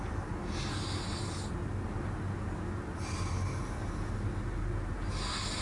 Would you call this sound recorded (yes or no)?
yes